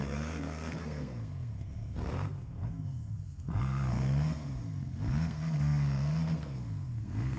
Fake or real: fake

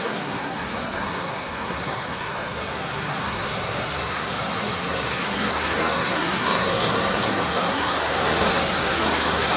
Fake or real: fake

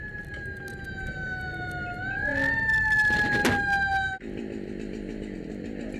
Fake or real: real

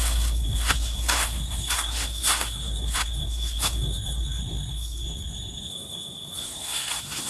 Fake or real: fake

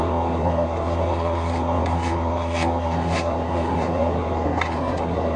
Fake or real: fake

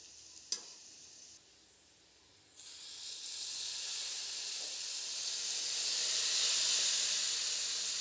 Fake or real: real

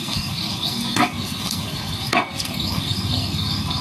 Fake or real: fake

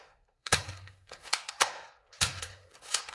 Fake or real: fake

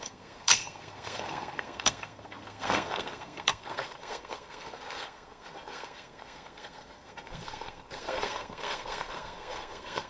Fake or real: fake